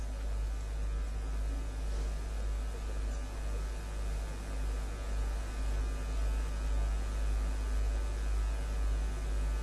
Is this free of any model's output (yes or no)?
yes